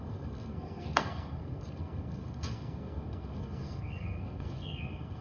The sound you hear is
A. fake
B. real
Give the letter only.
A